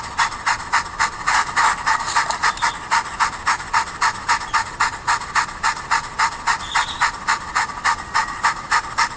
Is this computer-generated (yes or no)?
no